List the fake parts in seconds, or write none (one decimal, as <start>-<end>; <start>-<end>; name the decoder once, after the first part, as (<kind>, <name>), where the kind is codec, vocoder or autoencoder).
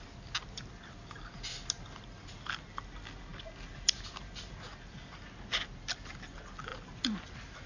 none